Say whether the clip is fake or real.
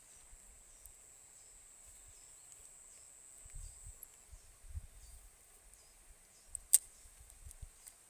real